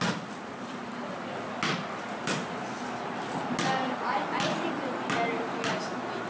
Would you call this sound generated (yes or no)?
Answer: no